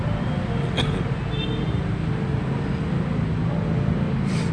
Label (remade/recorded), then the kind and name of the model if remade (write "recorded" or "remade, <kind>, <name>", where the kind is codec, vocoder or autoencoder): recorded